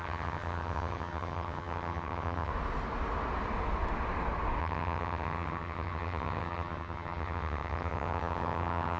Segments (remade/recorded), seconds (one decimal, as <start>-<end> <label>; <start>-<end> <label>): 0.0-2.5 remade; 2.5-4.6 recorded; 4.6-9.0 remade